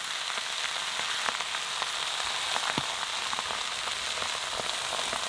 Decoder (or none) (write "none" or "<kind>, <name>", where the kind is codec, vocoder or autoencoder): none